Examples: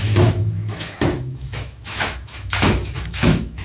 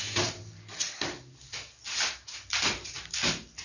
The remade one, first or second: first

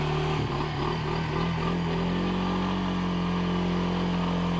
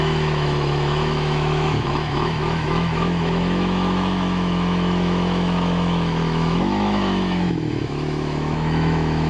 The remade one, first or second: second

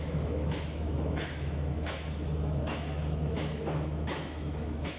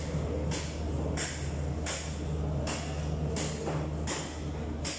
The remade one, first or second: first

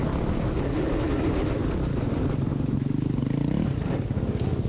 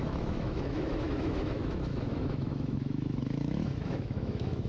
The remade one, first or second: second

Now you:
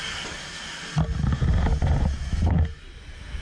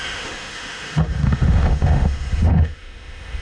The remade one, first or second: second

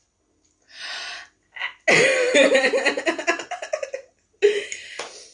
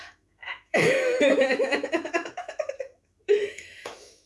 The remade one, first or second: second